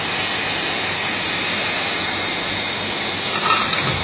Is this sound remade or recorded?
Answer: recorded